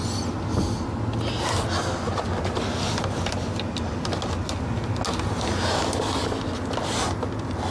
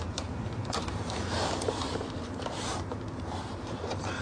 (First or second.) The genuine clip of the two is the first